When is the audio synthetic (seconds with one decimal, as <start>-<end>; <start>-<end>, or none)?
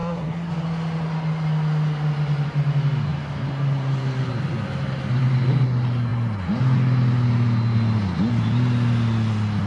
0.0-0.5